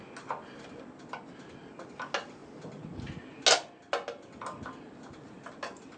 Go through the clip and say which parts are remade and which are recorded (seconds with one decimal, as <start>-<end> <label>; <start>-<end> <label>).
0.0-6.0 recorded